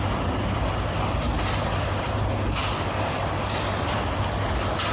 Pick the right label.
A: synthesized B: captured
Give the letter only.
B